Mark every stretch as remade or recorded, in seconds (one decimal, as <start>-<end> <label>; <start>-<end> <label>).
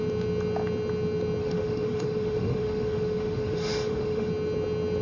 0.0-1.4 recorded; 1.4-4.3 remade; 4.3-5.0 recorded